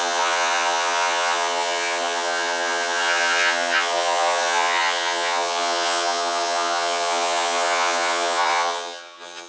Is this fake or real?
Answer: fake